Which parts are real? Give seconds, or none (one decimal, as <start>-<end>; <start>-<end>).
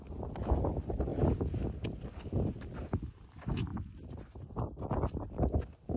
0.0-6.0